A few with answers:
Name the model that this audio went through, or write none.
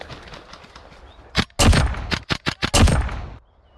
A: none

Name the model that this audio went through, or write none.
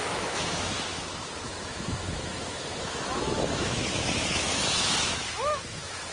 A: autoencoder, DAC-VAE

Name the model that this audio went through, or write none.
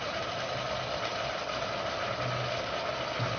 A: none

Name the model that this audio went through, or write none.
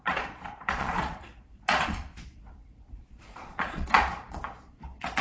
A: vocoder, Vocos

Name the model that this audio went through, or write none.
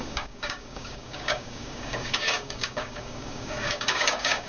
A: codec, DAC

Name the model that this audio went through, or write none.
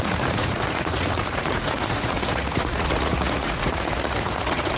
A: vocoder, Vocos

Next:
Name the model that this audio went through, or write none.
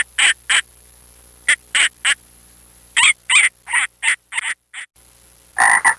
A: none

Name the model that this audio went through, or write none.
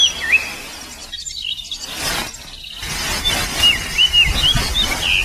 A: none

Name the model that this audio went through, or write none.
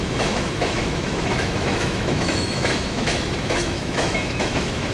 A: autoencoder, DAC-VAE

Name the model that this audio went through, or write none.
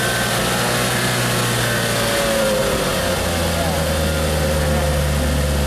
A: none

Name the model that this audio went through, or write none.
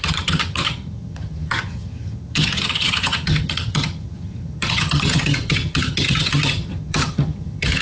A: vocoder, HiFi-GAN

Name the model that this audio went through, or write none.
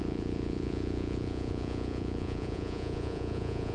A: vocoder, Vocos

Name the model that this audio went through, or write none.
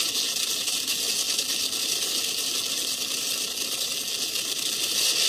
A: none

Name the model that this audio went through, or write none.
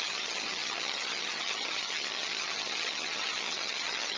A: vocoder, HiFi-GAN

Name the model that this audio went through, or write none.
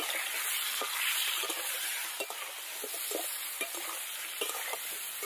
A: none